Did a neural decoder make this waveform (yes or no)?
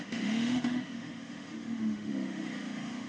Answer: yes